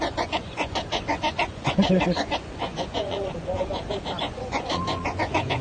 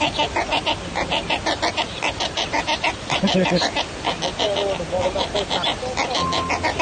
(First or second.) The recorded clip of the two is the second